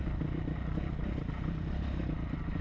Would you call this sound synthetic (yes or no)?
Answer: no